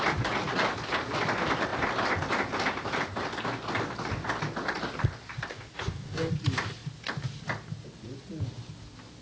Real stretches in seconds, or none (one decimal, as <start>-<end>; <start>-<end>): 0.0-5.5; 6.3-9.2